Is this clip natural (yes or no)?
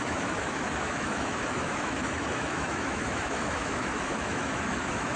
no